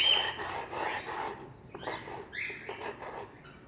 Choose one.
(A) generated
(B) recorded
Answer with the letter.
B